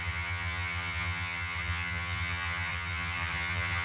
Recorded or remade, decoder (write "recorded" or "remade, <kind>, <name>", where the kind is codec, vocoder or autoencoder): remade, vocoder, HiFi-GAN